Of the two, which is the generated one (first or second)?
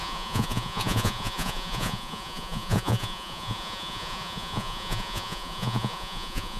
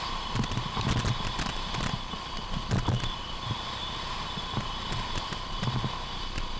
first